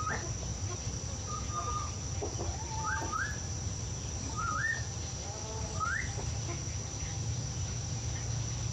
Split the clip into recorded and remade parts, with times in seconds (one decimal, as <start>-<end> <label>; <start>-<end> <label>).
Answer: 0.0-2.2 recorded; 2.2-5.1 remade; 5.1-7.1 recorded; 7.1-8.0 remade; 8.0-8.7 recorded